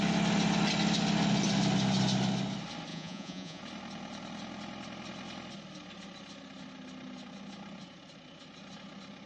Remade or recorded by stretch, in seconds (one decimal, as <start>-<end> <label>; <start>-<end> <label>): 0.0-2.9 recorded; 2.9-3.6 remade; 3.6-9.3 recorded